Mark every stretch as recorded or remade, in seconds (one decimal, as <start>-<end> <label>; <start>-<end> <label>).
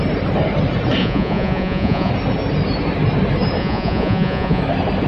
0.0-1.0 recorded; 1.0-2.1 remade; 2.1-3.6 recorded; 3.6-4.6 remade; 4.6-5.1 recorded